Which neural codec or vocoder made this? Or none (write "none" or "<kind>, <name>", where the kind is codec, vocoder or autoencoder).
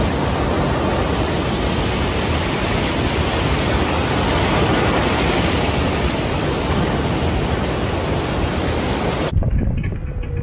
none